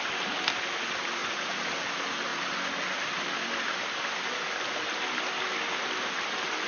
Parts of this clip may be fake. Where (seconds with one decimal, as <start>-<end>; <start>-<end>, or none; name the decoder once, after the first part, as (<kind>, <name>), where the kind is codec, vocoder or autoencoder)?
1.2-1.7 (vocoder, Vocos)